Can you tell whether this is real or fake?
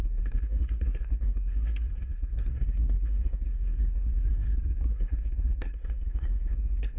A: fake